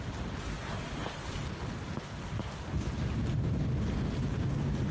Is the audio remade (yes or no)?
no